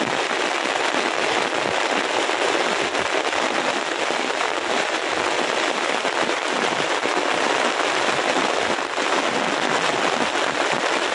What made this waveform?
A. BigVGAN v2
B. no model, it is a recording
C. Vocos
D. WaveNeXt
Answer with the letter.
B